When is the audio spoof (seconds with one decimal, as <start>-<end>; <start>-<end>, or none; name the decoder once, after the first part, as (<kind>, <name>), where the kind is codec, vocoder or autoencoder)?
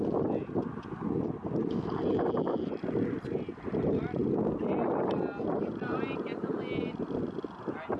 none